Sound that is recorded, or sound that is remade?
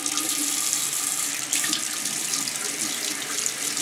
remade